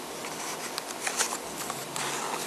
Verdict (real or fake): real